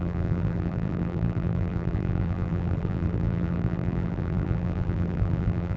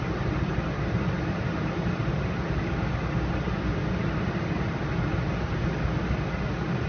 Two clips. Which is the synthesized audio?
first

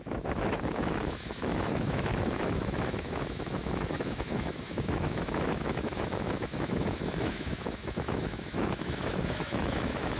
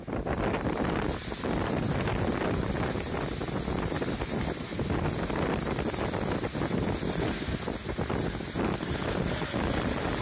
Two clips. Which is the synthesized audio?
first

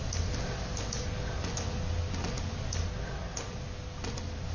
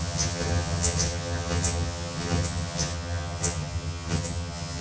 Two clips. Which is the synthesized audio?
second